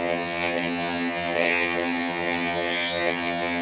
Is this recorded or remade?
remade